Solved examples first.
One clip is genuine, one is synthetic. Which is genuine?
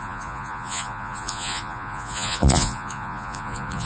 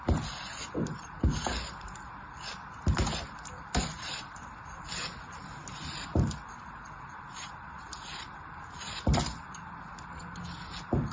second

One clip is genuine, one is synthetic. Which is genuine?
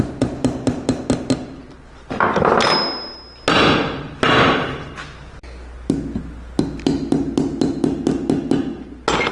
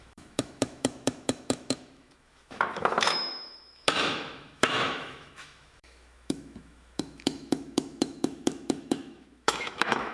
first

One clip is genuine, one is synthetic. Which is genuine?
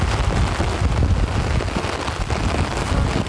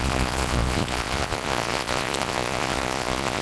first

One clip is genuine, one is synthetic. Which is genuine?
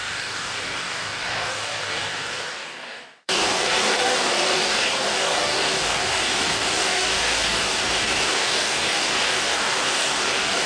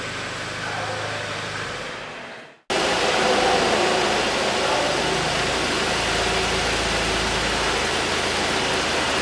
second